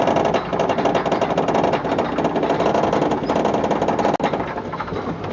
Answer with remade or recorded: recorded